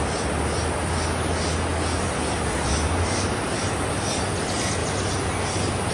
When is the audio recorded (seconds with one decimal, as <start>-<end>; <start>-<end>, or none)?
0.0-5.9